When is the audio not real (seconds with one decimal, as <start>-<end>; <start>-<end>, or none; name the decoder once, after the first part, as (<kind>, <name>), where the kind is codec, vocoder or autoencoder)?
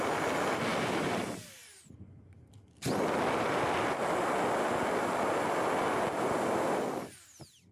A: 0.7-2.5 (vocoder, BigVGAN v2)